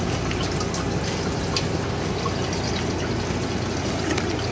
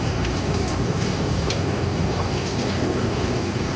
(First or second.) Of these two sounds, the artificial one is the second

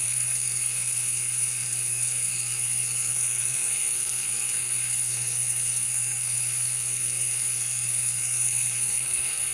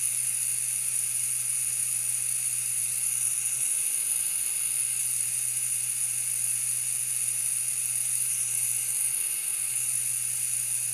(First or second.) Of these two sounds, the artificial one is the first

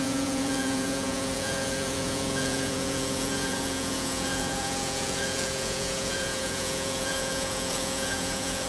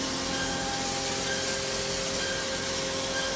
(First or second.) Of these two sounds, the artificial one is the first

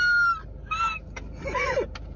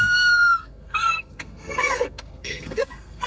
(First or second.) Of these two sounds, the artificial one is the second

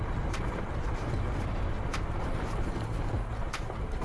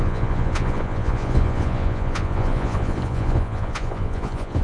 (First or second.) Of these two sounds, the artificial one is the second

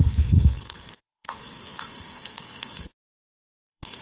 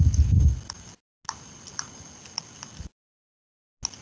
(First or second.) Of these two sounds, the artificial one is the first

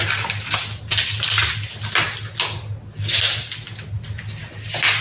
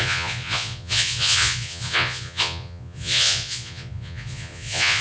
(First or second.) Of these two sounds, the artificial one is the second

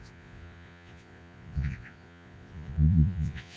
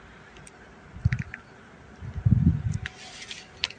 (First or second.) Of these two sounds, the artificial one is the first